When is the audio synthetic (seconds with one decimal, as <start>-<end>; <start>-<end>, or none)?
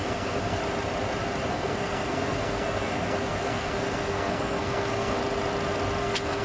0.0-0.6; 1.5-5.2; 6.0-6.4